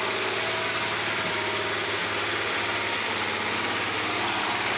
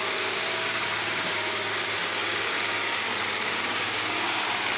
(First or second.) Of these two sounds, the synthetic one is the second